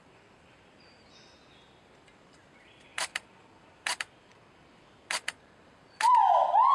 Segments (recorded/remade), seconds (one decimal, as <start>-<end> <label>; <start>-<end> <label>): 0.0-6.7 remade